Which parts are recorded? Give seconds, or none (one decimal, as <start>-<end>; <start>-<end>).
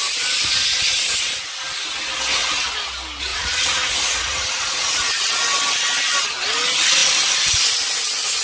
0.0-3.3; 5.1-8.4